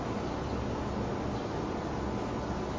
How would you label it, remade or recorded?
recorded